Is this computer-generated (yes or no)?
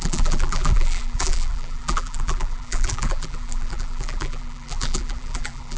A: yes